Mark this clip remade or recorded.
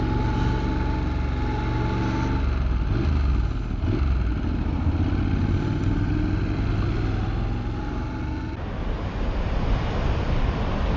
recorded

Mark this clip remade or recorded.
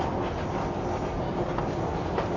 recorded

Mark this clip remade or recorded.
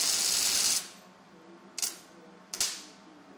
recorded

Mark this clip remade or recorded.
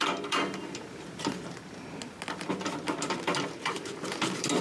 recorded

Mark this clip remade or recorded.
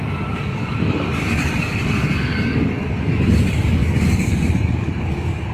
remade